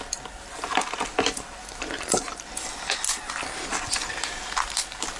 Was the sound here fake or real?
real